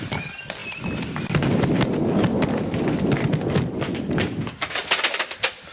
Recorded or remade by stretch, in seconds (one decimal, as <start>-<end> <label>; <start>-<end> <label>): 0.0-5.7 recorded